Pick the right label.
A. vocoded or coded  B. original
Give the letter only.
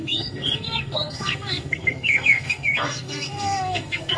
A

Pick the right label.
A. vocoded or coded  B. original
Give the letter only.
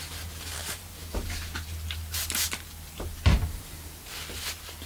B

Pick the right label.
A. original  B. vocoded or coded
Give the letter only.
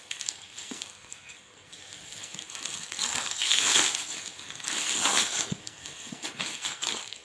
B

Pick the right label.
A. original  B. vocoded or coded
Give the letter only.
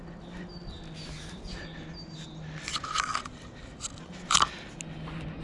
A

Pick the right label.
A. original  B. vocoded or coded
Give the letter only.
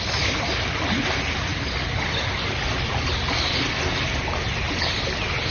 A